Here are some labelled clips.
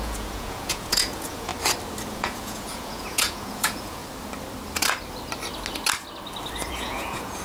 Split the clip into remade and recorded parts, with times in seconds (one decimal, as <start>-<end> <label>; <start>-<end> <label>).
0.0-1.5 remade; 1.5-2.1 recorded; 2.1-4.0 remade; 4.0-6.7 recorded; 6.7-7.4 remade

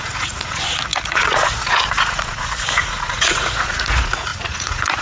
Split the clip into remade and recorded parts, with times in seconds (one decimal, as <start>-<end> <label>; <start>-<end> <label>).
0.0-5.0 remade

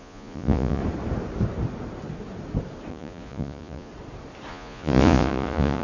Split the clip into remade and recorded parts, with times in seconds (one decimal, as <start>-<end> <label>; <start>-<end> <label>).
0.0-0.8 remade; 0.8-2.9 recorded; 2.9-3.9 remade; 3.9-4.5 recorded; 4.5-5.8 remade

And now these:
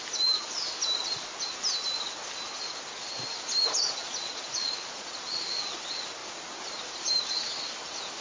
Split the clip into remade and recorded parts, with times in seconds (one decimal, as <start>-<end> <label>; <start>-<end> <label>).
0.0-4.0 recorded; 4.0-5.6 remade; 5.6-8.2 recorded

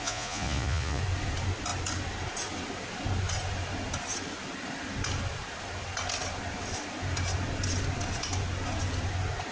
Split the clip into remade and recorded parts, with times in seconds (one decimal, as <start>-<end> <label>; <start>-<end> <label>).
0.0-1.0 remade; 1.0-9.5 recorded

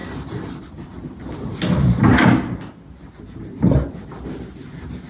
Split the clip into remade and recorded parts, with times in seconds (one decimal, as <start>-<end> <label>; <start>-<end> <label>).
0.0-5.1 recorded